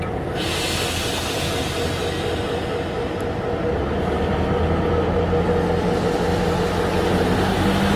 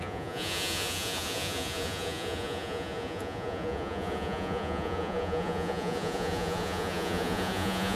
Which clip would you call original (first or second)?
first